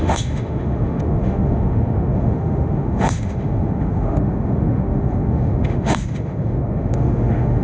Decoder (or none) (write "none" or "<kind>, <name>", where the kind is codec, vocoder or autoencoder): autoencoder, DAC-VAE